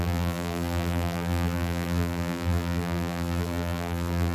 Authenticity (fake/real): fake